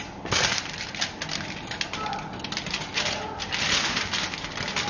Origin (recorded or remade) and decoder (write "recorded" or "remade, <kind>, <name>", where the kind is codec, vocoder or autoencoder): recorded